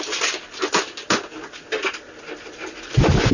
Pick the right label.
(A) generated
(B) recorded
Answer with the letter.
B